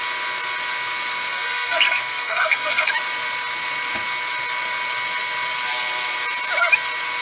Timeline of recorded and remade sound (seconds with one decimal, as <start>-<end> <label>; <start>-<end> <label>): 0.0-1.3 recorded; 1.3-2.9 remade; 2.9-7.2 recorded